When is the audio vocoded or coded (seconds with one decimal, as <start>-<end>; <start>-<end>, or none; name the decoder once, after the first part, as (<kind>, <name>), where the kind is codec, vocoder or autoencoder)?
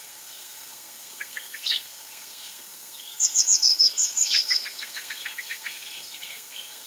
0.0-6.9 (codec, SNAC)